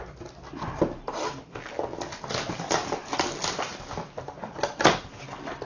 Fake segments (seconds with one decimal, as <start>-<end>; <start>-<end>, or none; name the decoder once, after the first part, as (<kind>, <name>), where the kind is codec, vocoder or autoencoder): none